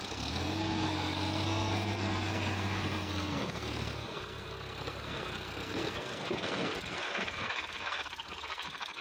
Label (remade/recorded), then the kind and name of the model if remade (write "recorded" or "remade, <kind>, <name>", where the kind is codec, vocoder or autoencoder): remade, codec, SNAC